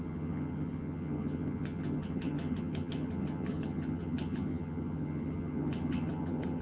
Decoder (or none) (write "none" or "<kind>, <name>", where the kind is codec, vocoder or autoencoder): vocoder, HiFi-GAN